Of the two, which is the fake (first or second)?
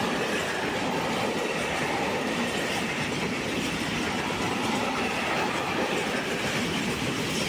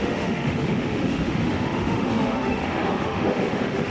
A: second